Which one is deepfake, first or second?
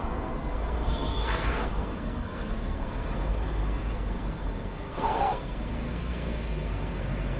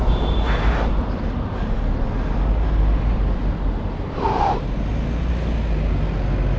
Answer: first